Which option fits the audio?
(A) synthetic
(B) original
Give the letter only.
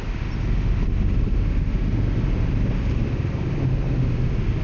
B